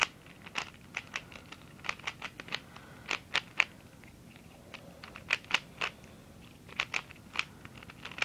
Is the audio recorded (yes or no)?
yes